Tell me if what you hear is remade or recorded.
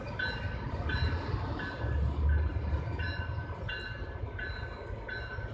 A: recorded